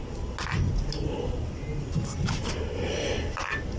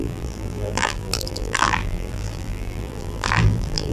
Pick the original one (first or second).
first